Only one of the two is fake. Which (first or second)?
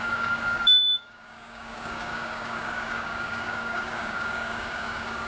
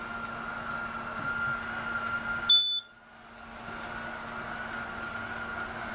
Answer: first